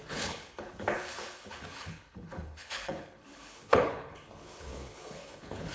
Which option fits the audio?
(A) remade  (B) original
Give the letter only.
A